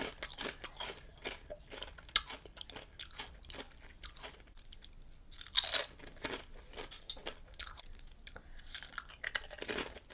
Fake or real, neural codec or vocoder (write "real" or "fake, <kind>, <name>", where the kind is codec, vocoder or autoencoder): real